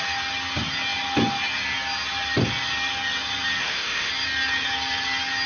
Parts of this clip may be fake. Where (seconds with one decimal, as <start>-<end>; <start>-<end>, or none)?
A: 3.6-4.1